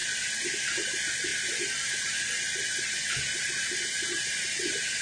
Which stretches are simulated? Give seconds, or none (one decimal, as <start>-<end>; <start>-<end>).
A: none